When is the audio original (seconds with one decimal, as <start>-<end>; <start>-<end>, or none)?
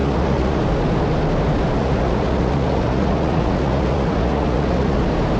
0.6-1.8; 5.0-5.4